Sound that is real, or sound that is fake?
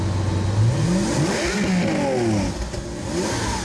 real